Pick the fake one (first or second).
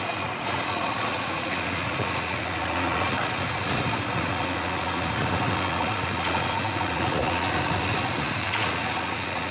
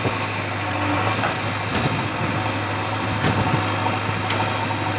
first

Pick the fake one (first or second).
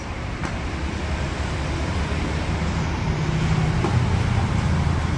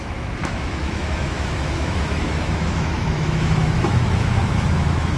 second